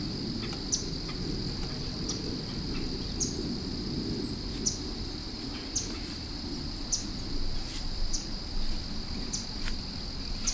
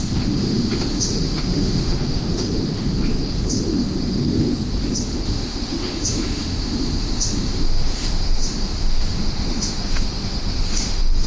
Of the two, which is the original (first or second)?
first